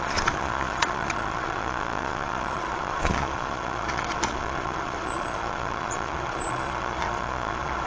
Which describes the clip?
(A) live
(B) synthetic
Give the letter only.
B